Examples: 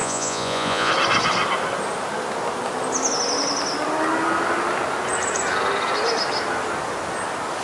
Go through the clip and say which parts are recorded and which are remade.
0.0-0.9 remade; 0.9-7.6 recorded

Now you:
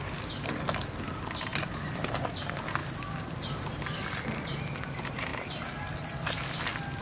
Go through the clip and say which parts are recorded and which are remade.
0.0-1.5 recorded; 1.5-2.1 remade; 2.1-5.3 recorded; 5.3-6.3 remade; 6.3-7.0 recorded

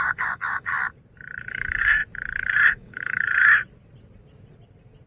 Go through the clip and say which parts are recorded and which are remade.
0.0-0.7 remade; 0.7-1.5 recorded; 1.5-2.0 remade; 2.0-2.7 recorded; 2.7-3.3 remade; 3.3-5.1 recorded